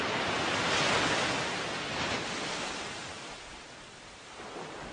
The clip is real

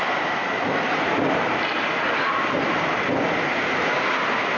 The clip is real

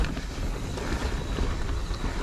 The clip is real